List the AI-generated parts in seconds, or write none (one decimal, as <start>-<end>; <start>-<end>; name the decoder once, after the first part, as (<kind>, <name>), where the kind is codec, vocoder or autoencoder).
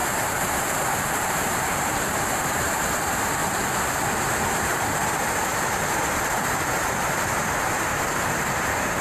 0.0-3.4 (vocoder, BigVGAN v2); 4.5-5.0; 8.0-9.0